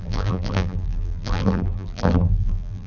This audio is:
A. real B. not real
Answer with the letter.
B